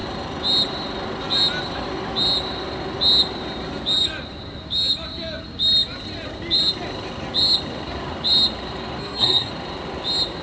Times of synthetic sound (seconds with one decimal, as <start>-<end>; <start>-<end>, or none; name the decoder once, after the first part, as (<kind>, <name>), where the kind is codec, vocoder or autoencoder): 9.0-9.5 (codec, SNAC)